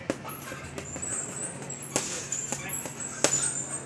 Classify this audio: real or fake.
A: real